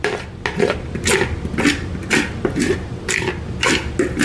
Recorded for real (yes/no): yes